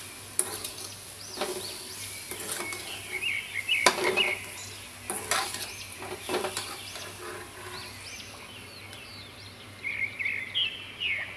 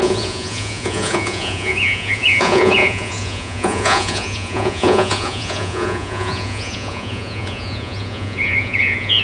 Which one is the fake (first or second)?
second